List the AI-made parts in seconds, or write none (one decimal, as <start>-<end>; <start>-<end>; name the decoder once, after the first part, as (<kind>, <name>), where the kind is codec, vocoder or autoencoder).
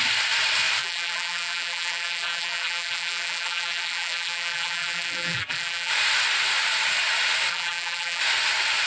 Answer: 0.8-5.9 (vocoder, BigVGAN v2); 7.5-8.2